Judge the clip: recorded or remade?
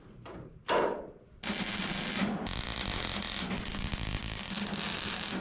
recorded